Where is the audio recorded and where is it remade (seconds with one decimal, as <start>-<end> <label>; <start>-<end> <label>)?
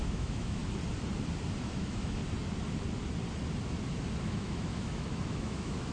0.0-0.6 remade; 0.6-1.6 recorded; 1.6-2.2 remade; 2.2-4.2 recorded; 4.2-5.9 remade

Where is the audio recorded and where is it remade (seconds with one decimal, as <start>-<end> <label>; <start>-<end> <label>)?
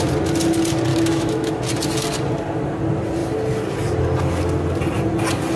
0.0-0.9 recorded; 0.9-1.6 remade; 1.6-5.6 recorded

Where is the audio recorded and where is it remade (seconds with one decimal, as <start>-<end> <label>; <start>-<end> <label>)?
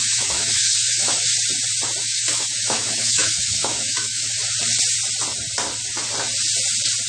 0.0-1.3 remade; 1.3-2.0 recorded; 2.0-4.4 remade; 4.4-7.1 recorded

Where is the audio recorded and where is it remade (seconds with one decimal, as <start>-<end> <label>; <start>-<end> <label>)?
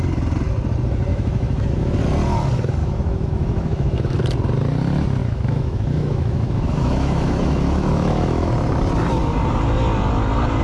0.0-1.1 recorded; 1.1-2.0 remade; 2.0-2.8 recorded; 2.8-4.2 remade; 4.2-5.2 recorded; 5.2-8.5 remade; 8.5-10.6 recorded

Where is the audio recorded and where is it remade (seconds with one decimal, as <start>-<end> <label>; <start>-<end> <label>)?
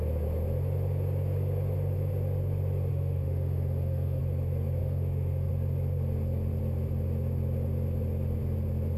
0.0-2.9 recorded; 2.9-4.2 remade; 4.2-4.8 recorded; 4.8-5.5 remade; 5.5-9.0 recorded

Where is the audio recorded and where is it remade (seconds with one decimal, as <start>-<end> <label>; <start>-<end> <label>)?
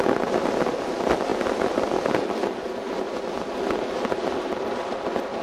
0.0-5.4 recorded